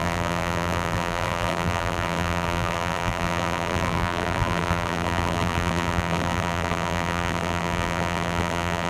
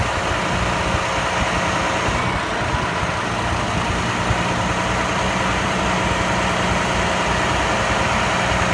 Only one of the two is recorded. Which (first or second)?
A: second